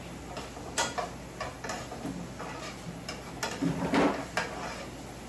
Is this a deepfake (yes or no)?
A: no